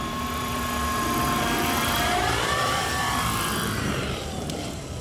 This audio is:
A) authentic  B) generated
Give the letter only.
B